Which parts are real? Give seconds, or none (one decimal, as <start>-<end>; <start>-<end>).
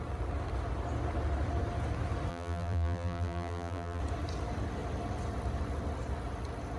0.0-2.3; 4.0-6.8